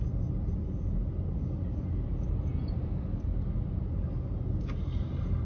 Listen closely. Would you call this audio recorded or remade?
recorded